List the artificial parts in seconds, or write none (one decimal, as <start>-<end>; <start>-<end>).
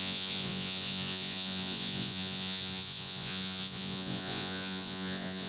0.0-5.5